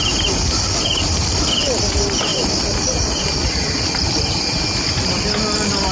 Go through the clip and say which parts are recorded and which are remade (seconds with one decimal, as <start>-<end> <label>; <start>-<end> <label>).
0.0-5.9 recorded

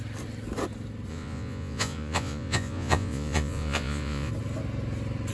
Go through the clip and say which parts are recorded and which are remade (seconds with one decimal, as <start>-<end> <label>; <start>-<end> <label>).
0.0-1.1 recorded; 1.1-4.3 remade; 4.3-5.3 recorded